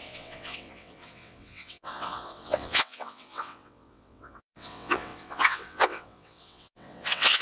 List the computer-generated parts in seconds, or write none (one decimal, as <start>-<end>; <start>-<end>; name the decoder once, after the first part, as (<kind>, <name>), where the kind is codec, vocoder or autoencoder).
0.0-7.4 (vocoder, WaveNeXt)